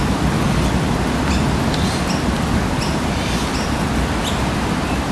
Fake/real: real